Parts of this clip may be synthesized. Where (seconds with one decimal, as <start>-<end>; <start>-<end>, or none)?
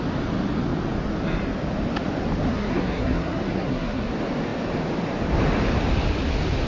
2.5-4.1